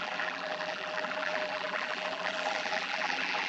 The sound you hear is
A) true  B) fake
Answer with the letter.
B